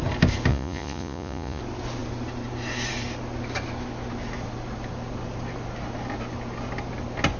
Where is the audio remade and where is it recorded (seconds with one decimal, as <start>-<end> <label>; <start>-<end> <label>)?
0.0-0.5 recorded; 0.5-1.6 remade; 1.6-7.4 recorded